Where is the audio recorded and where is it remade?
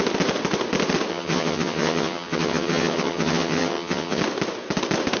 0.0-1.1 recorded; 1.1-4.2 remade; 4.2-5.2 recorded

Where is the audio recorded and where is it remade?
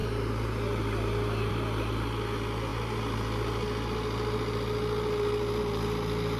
0.0-6.4 recorded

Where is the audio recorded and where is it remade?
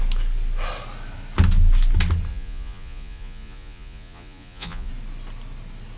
0.0-2.3 recorded; 2.3-4.9 remade; 4.9-6.0 recorded